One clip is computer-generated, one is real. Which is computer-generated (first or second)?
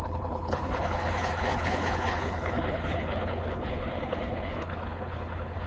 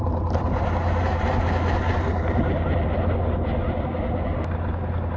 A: first